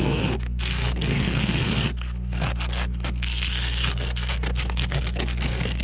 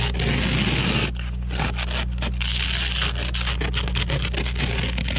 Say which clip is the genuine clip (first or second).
second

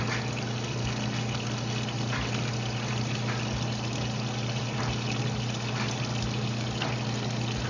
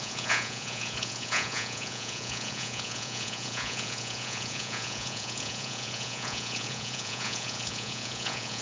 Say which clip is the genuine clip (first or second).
first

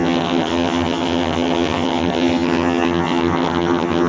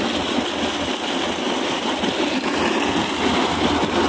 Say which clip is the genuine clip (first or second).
second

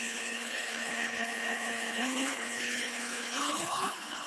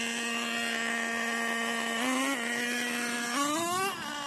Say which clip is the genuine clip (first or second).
second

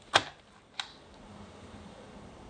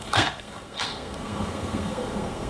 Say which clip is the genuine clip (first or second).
first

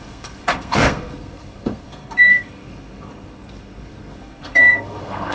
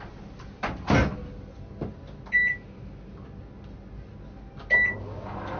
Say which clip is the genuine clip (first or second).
second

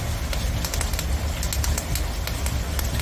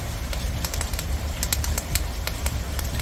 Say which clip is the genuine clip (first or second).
first